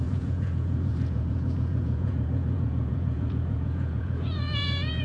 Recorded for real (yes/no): no